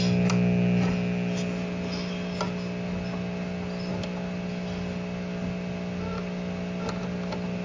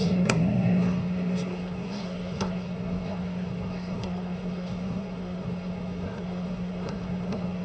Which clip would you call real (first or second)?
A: first